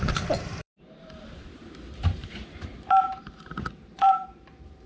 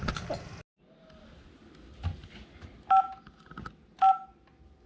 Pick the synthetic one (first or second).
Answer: first